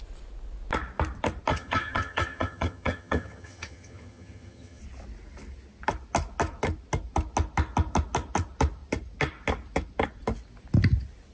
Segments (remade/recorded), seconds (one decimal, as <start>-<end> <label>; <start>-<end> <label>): 0.0-1.5 recorded; 1.5-4.8 remade; 4.8-11.3 recorded